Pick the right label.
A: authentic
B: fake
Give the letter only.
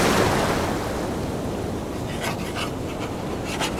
A